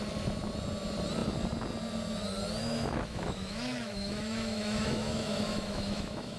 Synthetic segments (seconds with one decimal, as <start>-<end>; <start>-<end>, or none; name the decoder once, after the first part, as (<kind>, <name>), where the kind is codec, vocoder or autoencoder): 2.6-6.4 (autoencoder, DAC-VAE)